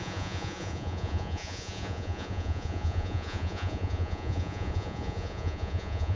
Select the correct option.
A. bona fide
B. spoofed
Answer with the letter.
B